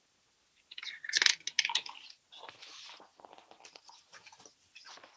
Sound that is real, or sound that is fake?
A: real